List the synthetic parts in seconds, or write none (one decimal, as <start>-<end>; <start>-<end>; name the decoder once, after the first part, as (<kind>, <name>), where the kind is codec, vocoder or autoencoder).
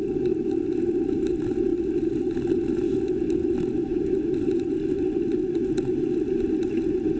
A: none